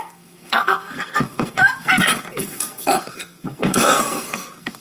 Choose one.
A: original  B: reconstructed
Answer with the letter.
B